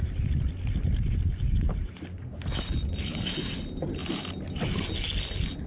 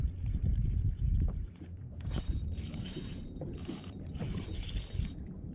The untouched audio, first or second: first